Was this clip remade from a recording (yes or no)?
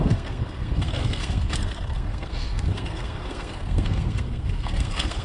yes